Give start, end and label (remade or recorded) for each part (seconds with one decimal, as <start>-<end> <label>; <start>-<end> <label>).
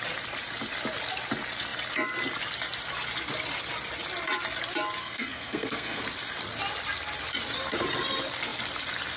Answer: 0.0-5.0 recorded; 5.0-6.0 remade; 6.0-9.2 recorded